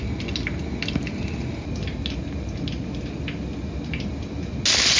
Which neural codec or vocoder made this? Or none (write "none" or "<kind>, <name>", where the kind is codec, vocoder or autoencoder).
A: none